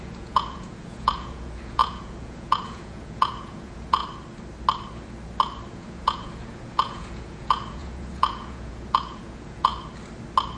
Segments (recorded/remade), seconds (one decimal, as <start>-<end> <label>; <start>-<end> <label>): 0.0-4.0 remade; 4.0-5.7 recorded; 5.7-9.7 remade; 9.7-10.6 recorded